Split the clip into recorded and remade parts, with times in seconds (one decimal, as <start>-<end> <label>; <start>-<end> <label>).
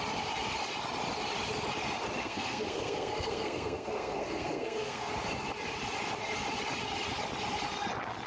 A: 0.0-2.2 recorded; 2.2-5.1 remade; 5.1-8.3 recorded